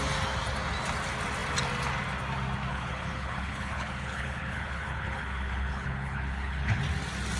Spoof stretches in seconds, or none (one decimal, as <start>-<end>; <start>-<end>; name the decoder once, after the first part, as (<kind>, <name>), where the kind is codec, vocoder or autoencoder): 2.7-6.8 (codec, HILCodec)